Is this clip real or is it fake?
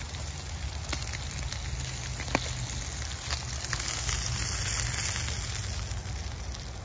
real